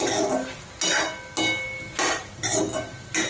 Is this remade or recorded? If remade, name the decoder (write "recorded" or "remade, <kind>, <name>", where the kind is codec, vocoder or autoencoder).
recorded